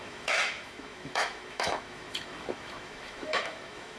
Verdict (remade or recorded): remade